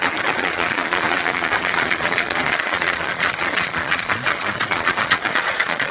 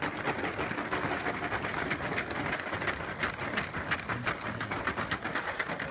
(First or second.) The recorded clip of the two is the second